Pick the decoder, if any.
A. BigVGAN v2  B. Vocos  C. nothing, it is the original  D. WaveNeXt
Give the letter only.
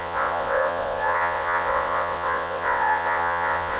D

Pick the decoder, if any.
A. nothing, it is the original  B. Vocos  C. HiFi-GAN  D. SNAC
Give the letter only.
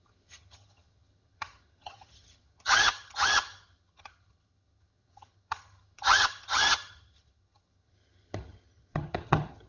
C